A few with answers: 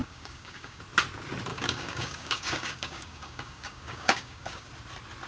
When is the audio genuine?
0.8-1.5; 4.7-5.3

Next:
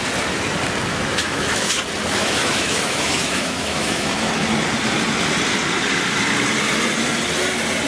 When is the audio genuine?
0.0-0.9; 1.8-2.2; 4.3-7.9

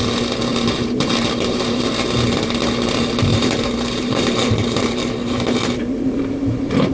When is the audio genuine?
0.0-0.5; 1.8-3.3

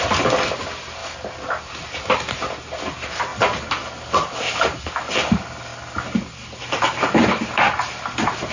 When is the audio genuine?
0.0-1.0; 1.6-5.7; 6.7-8.5

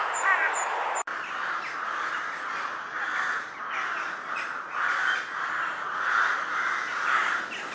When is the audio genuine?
0.0-1.1; 1.6-7.7

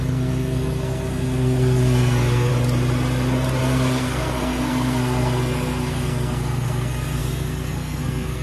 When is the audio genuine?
2.5-3.6

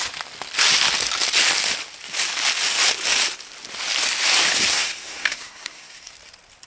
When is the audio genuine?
0.0-4.7; 6.1-6.7

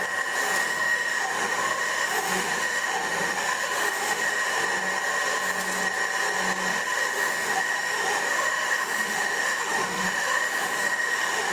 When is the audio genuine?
0.0-0.6; 4.4-6.7